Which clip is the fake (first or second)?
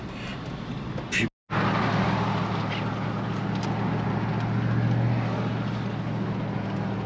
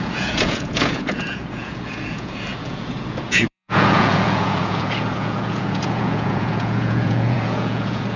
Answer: second